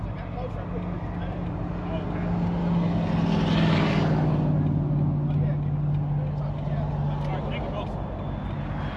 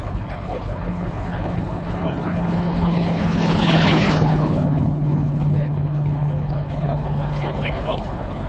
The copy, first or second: second